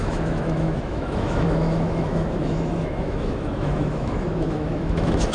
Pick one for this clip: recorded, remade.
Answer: remade